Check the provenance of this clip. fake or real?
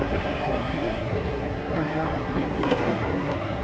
fake